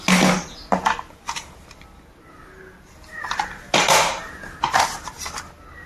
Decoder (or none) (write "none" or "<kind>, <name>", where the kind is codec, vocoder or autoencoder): none